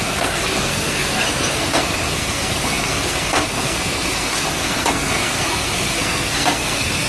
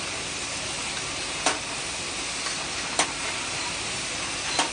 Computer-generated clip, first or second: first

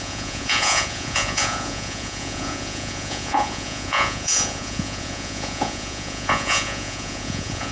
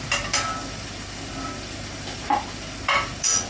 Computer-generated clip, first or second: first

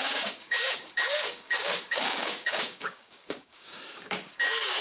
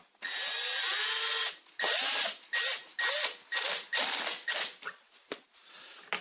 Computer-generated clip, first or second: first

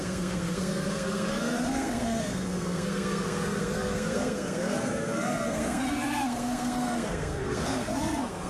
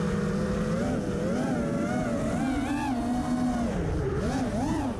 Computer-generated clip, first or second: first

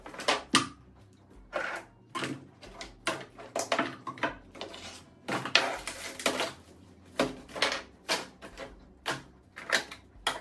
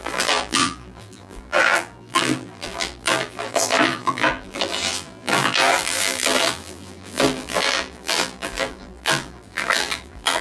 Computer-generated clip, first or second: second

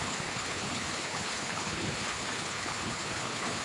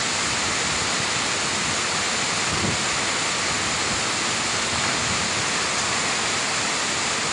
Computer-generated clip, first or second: first